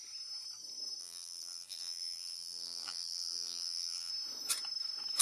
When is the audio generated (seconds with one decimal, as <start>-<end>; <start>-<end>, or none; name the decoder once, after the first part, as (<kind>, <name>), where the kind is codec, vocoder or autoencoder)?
1.0-4.1 (vocoder, BigVGAN v2)